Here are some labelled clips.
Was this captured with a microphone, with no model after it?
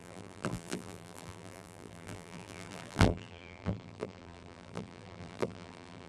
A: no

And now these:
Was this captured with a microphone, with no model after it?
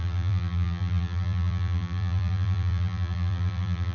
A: no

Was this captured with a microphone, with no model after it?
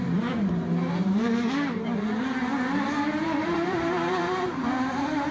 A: no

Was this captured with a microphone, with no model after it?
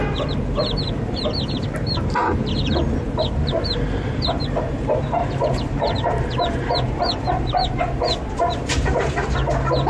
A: no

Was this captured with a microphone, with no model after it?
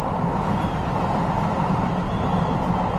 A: yes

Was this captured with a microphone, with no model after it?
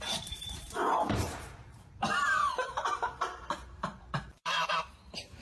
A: no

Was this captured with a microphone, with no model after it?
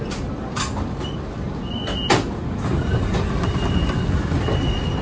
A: yes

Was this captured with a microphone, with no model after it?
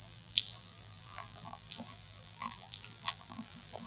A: no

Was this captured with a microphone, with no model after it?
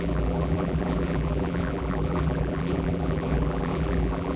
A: no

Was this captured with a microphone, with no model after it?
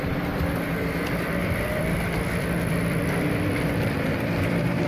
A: no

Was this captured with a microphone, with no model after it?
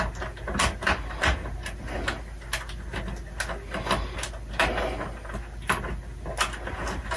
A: yes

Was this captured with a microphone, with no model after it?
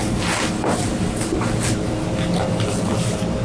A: yes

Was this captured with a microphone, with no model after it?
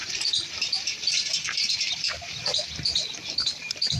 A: no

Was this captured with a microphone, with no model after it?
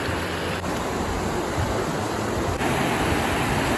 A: no